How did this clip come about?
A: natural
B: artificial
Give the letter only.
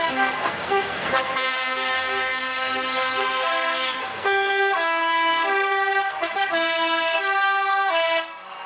B